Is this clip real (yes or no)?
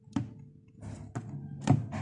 yes